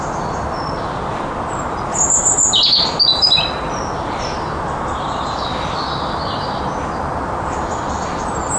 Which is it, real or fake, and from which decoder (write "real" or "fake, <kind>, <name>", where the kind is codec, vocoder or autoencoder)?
real